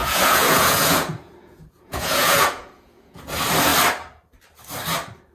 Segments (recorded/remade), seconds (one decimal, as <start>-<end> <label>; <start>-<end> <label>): 0.0-3.2 remade; 3.2-5.3 recorded